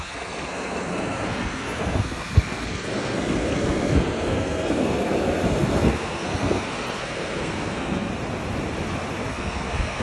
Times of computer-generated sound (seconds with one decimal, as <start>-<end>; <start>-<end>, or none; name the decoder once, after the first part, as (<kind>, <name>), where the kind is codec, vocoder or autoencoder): 0.0-8.1 (codec, SNAC); 9.3-10.0